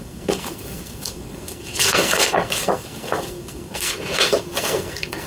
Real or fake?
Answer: fake